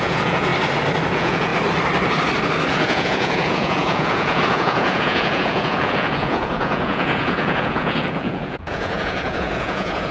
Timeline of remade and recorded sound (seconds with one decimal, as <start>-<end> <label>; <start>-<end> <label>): 0.0-0.5 remade; 0.5-1.1 recorded; 1.1-1.5 remade; 1.5-2.7 recorded; 2.7-10.1 remade